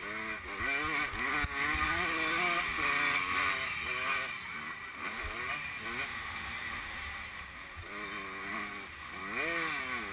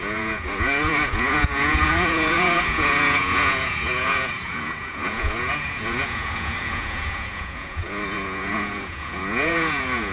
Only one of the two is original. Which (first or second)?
first